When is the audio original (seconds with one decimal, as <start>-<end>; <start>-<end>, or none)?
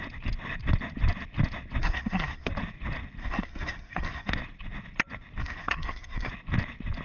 0.0-1.8; 2.5-3.2; 4.3-5.4; 6.3-7.0